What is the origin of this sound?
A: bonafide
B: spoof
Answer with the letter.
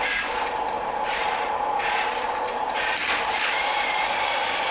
B